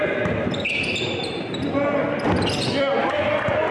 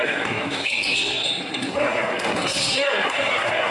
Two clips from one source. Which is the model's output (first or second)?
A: second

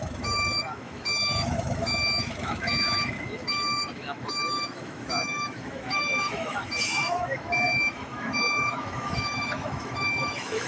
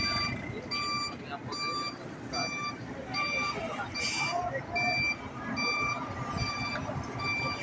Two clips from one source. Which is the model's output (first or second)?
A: first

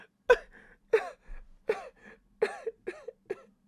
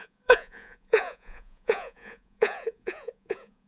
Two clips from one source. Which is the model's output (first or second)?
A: second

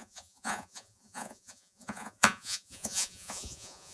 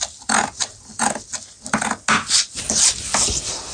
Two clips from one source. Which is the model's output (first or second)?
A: first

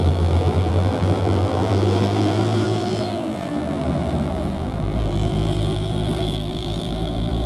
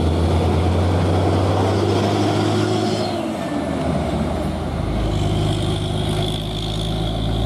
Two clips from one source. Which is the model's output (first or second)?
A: first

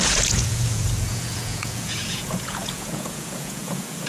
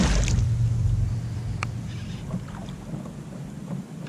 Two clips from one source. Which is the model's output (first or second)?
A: first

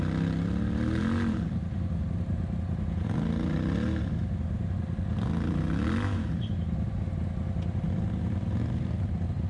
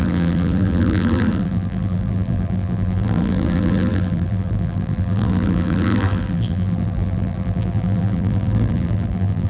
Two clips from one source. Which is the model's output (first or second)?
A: second